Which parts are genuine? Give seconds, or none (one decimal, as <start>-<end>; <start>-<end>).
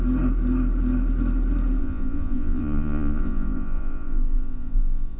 0.0-1.8